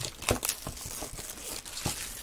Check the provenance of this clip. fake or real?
real